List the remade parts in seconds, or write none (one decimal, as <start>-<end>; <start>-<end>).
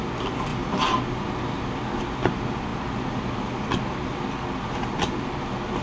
none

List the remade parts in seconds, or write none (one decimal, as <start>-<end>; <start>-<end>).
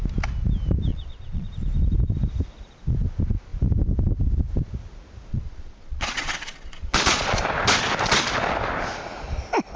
0.9-1.5; 5.3-7.4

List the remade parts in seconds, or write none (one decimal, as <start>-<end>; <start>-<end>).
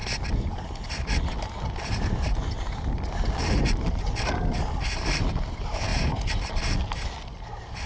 none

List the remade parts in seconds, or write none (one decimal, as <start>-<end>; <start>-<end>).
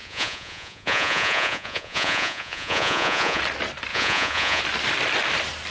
0.0-3.4; 3.9-4.6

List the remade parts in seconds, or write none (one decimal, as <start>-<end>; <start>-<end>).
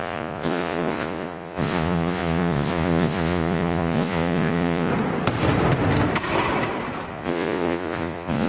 0.0-4.9; 7.1-8.5